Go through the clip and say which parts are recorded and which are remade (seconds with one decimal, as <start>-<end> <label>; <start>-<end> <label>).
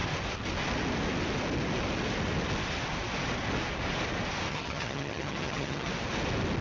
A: 0.0-4.5 recorded; 4.5-5.9 remade; 5.9-6.6 recorded